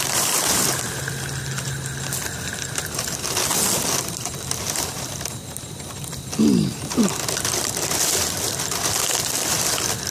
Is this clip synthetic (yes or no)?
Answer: no